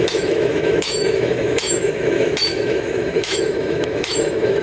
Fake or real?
fake